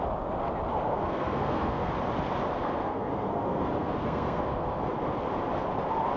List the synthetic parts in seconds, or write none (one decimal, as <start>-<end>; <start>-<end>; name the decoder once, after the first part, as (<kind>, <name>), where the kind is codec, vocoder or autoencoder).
0.7-1.9 (codec, SNAC); 2.5-4.9